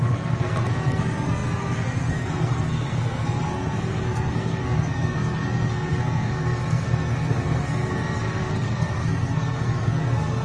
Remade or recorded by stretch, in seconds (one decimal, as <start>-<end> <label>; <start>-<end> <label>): 0.0-10.4 remade